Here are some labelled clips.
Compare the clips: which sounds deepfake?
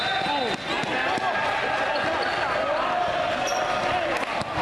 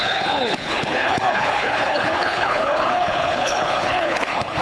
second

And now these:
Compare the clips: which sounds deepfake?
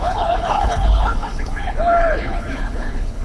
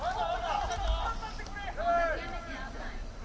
first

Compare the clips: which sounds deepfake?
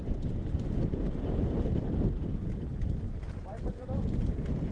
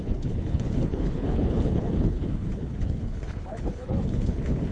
second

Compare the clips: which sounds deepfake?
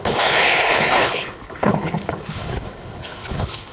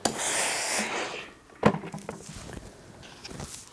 first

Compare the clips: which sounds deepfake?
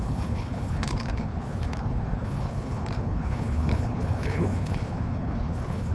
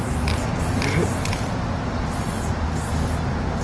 first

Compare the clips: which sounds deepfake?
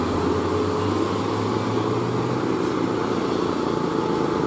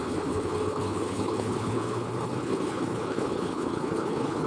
second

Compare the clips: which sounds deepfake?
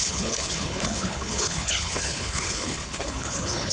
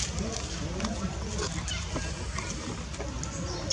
first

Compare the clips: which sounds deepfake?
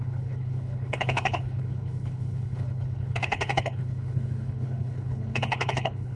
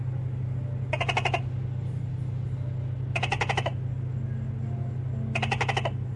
first